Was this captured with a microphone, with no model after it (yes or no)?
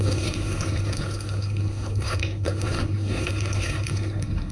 no